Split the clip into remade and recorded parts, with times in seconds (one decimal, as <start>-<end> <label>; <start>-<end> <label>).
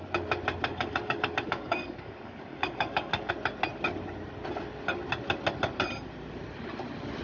0.0-0.7 recorded; 0.7-3.3 remade; 3.3-7.2 recorded